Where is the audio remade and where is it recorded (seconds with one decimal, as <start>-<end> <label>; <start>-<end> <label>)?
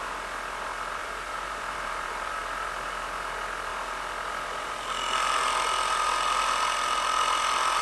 0.0-1.0 recorded; 1.0-2.4 remade; 2.4-7.8 recorded